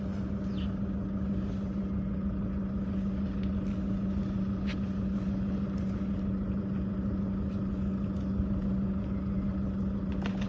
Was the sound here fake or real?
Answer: real